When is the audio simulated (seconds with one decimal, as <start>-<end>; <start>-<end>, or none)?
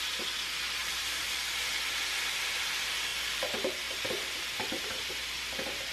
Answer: 0.8-1.4; 3.1-5.1